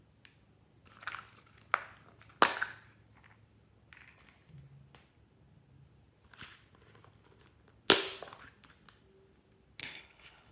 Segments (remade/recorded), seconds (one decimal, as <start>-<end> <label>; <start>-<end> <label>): 0.0-9.8 recorded; 9.8-10.5 remade